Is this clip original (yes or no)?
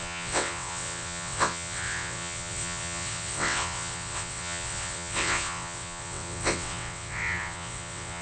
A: no